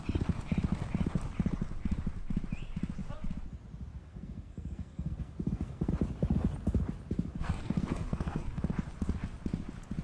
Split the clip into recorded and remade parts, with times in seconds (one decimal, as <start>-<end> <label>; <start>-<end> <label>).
0.0-4.0 recorded; 4.0-5.9 remade; 5.9-7.3 recorded; 7.3-8.6 remade; 8.6-10.0 recorded